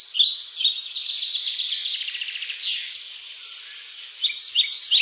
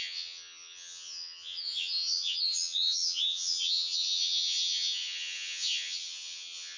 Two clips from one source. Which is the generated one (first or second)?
second